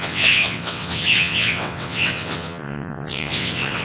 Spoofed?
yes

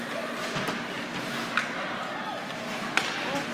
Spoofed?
no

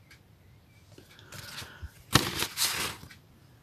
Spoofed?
no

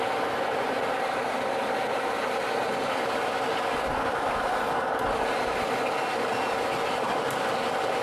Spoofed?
no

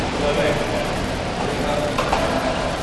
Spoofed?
yes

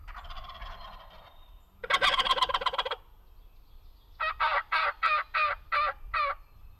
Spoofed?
no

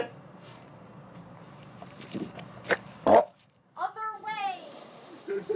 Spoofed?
yes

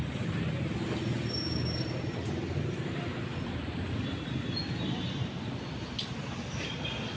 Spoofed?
no